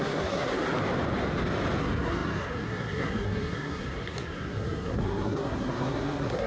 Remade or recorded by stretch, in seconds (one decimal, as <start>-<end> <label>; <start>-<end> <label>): 0.0-0.5 remade; 0.5-1.8 recorded; 1.8-6.5 remade